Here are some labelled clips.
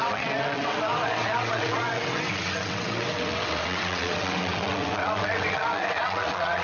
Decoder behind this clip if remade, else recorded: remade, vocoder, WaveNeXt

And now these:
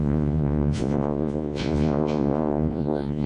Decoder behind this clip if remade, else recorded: remade, vocoder, Vocos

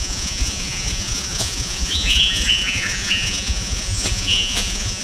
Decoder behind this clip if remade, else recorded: remade, vocoder, Vocos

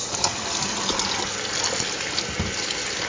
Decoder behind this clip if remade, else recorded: recorded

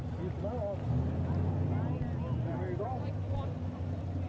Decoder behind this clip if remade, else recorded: recorded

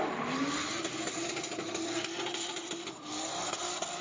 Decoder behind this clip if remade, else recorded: recorded